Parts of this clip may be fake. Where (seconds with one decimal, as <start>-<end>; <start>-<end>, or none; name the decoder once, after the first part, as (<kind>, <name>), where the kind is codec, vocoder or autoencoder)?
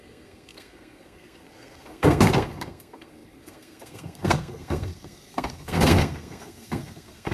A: 0.0-7.3 (codec, SNAC)